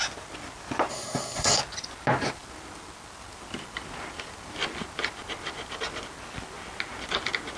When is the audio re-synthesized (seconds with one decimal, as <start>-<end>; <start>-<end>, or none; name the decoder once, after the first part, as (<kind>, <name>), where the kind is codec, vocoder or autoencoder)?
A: 0.9-1.6 (codec, SNAC)